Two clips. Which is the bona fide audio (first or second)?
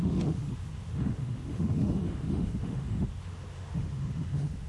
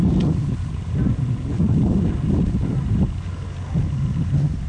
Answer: second